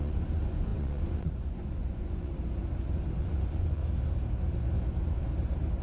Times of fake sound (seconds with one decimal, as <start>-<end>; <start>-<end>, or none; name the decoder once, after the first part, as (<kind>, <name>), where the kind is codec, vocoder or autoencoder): 0.0-2.3 (vocoder, Vocos); 3.2-3.8